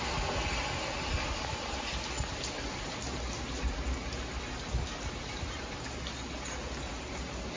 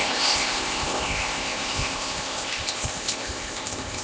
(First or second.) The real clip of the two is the first